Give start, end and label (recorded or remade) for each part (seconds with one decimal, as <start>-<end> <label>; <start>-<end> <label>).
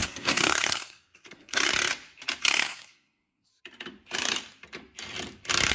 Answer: 0.0-1.7 remade; 1.7-2.4 recorded; 2.4-3.5 remade; 3.5-5.7 recorded